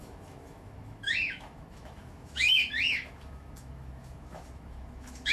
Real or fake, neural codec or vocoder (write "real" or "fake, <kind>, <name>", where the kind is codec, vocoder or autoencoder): fake, autoencoder, DAC-VAE